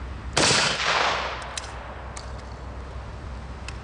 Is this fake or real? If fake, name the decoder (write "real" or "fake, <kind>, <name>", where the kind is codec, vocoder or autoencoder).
real